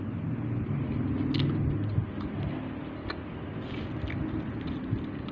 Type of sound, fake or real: real